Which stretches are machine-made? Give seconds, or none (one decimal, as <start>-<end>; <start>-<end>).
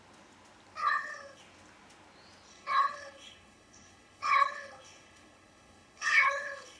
0.8-1.4; 2.5-6.8